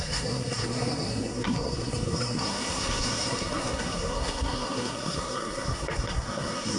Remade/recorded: remade